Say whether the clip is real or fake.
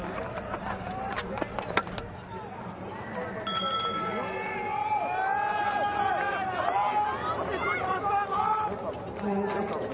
real